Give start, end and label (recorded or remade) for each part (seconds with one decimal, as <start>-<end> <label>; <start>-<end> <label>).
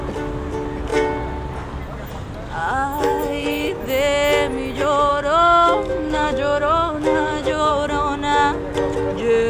0.0-2.6 recorded; 2.6-3.7 remade; 3.7-5.1 recorded; 5.1-7.7 remade; 7.7-9.5 recorded